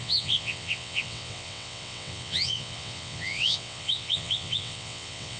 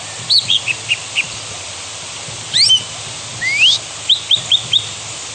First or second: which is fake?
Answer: first